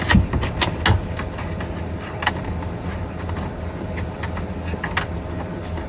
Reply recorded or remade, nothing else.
recorded